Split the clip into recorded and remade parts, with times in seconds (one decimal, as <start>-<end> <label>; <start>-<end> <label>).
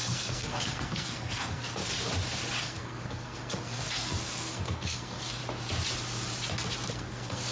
0.0-1.8 remade; 1.8-2.6 recorded; 2.6-5.4 remade; 5.4-6.9 recorded; 6.9-7.5 remade